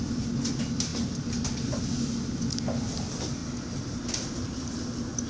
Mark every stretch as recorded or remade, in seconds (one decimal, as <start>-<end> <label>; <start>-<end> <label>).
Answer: 0.0-5.3 recorded

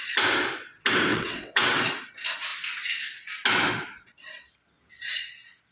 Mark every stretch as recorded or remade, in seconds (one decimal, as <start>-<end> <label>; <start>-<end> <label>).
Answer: 0.0-1.1 recorded; 1.1-1.8 remade; 1.8-5.7 recorded

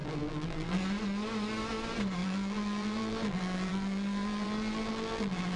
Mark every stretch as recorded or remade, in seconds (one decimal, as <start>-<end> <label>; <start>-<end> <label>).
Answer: 0.0-0.8 remade; 0.8-2.2 recorded; 2.2-5.6 remade

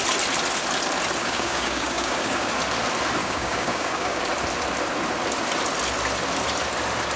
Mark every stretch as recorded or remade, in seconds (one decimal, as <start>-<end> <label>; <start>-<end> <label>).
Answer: 0.0-1.2 recorded; 1.2-2.5 remade; 2.5-3.2 recorded; 3.2-4.2 remade; 4.2-7.2 recorded

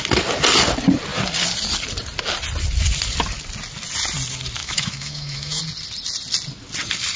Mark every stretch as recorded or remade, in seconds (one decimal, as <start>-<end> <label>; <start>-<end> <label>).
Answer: 0.0-4.6 recorded; 4.6-5.6 remade; 5.6-7.2 recorded

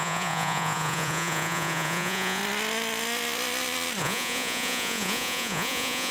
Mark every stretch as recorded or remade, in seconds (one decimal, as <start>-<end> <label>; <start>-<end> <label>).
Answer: 0.0-2.4 remade; 2.4-4.0 recorded; 4.0-6.1 remade

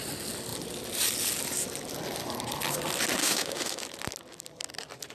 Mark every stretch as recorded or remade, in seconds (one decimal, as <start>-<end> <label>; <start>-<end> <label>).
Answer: 0.0-3.2 recorded; 3.2-3.8 remade; 3.8-5.1 recorded

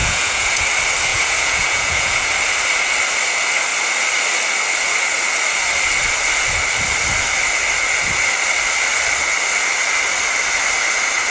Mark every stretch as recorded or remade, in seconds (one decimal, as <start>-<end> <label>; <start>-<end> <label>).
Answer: 0.0-0.6 remade; 0.6-1.1 recorded; 1.1-2.3 remade; 2.3-11.3 recorded